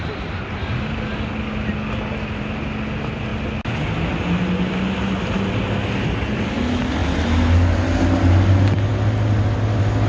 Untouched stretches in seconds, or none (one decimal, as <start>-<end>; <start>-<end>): 0.0-10.1